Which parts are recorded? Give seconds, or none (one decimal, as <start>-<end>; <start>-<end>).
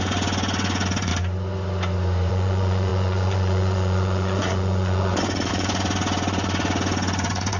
1.1-2.3